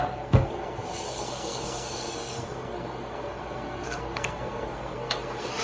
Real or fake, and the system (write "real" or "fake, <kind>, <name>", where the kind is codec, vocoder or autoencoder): fake, codec, SNAC